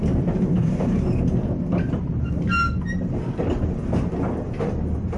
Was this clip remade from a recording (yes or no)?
no